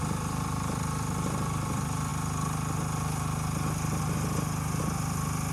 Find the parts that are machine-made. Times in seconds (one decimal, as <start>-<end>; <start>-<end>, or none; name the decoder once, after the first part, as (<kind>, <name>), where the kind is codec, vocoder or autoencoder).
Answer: 0.0-2.1 (vocoder, BigVGAN v2); 4.8-5.5